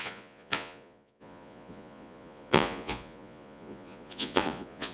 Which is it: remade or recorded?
remade